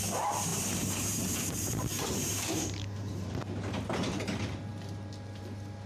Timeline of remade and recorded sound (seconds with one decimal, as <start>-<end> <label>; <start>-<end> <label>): 0.0-0.5 recorded; 0.5-3.3 remade; 3.3-5.9 recorded